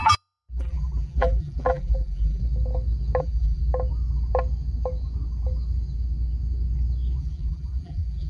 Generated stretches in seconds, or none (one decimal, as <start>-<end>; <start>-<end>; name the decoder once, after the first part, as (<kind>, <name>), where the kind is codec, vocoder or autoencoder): 0.0-2.4 (vocoder, BigVGAN v2); 3.2-3.6; 7.2-8.3